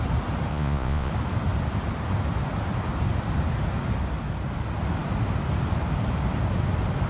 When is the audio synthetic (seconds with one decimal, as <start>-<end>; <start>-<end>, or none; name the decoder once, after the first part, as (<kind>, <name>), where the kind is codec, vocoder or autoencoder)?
0.5-1.1 (vocoder, Vocos)